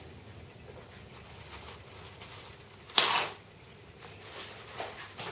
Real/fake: real